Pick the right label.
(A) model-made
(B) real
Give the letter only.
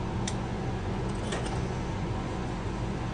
A